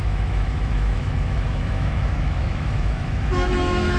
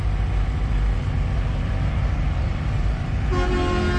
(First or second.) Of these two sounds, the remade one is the first